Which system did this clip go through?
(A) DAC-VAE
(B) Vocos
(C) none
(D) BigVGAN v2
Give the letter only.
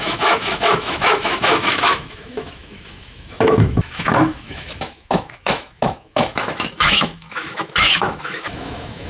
A